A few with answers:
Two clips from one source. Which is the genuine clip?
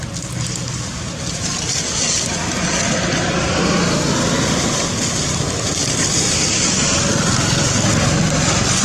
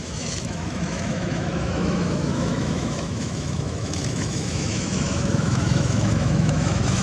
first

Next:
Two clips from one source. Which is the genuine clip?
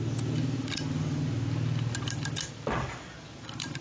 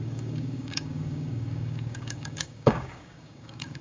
first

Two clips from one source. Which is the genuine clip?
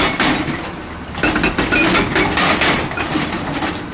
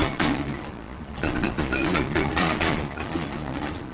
first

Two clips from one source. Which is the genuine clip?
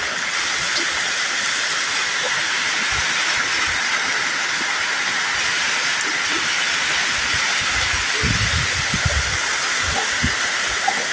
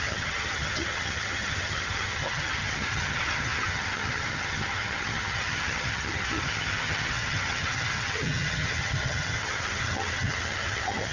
first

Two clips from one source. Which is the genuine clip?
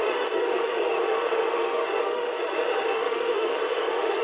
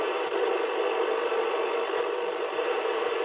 second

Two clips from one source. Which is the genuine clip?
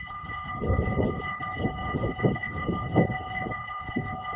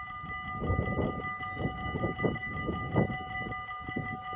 second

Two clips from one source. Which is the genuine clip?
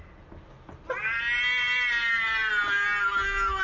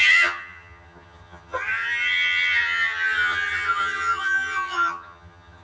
first